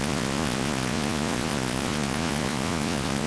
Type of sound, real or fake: fake